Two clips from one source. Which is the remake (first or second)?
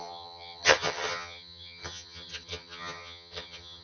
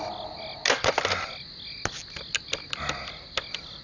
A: first